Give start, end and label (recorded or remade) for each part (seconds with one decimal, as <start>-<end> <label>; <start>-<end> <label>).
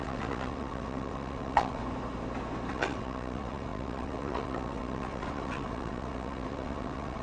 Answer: 0.0-1.8 remade; 1.8-2.7 recorded; 2.7-7.2 remade